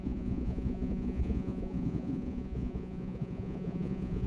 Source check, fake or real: fake